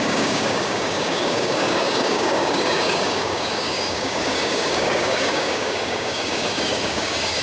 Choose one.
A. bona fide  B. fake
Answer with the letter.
B